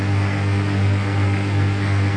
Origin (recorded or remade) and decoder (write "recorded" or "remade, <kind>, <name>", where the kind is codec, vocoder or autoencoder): remade, codec, SNAC